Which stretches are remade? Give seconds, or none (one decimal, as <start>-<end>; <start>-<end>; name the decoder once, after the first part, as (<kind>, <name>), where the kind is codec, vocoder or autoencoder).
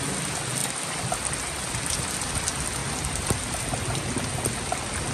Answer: 2.8-3.5 (vocoder, BigVGAN v2)